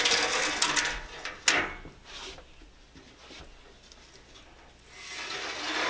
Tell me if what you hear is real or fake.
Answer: real